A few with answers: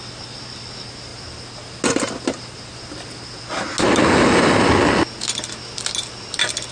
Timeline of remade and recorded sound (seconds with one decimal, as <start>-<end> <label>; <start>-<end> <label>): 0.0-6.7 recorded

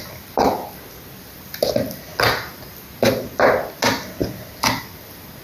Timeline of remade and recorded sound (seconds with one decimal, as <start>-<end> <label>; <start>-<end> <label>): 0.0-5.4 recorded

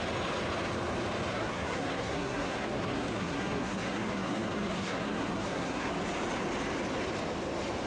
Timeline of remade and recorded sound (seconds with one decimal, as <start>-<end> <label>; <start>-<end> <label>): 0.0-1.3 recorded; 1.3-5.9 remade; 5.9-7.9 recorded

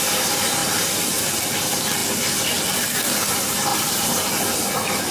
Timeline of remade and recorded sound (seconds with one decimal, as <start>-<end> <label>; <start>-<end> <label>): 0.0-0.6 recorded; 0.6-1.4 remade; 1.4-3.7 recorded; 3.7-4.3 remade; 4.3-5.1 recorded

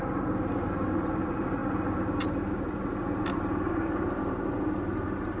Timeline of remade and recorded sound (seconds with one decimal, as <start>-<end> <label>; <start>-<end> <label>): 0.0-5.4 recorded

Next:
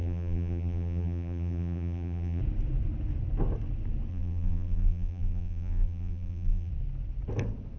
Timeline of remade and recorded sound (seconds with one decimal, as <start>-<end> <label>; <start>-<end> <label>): 0.0-2.4 remade; 2.4-4.1 recorded; 4.1-6.7 remade; 6.7-7.8 recorded